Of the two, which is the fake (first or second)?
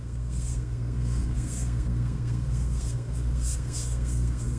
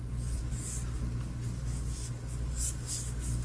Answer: first